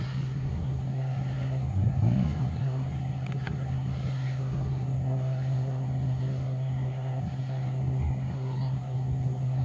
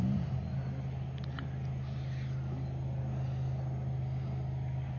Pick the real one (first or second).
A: second